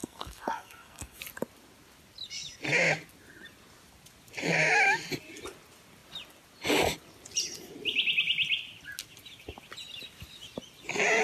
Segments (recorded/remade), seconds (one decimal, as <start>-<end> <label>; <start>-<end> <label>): 0.0-1.2 remade; 1.2-11.2 recorded